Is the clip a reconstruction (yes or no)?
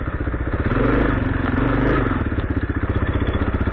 no